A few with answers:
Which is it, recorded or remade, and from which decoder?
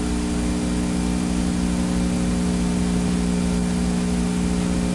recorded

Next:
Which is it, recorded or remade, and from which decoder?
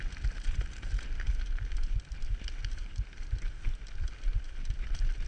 recorded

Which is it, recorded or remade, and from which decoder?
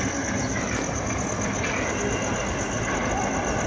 recorded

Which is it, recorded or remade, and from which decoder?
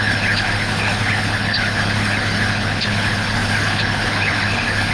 remade, codec, HILCodec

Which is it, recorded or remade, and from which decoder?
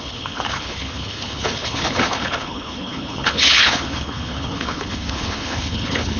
remade, codec, HILCodec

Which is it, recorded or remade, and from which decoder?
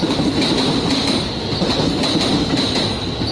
recorded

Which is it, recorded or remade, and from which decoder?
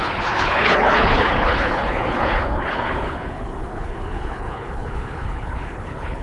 remade, codec, HILCodec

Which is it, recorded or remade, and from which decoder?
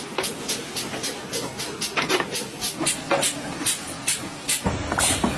recorded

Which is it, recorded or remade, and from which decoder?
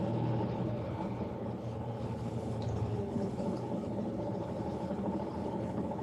remade, codec, HILCodec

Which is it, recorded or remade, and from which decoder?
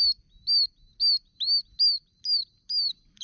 recorded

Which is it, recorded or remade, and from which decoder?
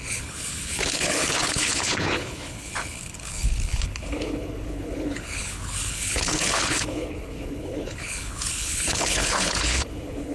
remade, codec, HILCodec